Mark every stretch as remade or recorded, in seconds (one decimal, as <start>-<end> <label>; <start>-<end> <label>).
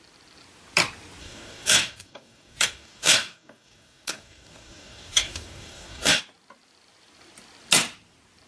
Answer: 0.0-1.2 recorded; 1.2-6.2 remade; 6.2-8.5 recorded